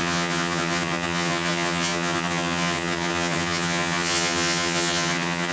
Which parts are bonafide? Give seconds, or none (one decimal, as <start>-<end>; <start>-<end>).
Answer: none